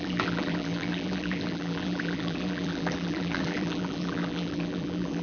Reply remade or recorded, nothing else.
remade